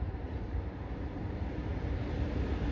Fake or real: fake